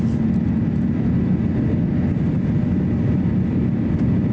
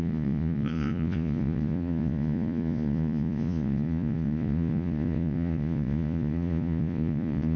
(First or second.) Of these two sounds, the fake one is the second